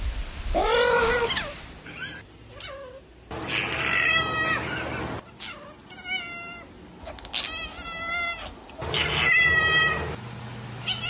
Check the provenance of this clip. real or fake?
real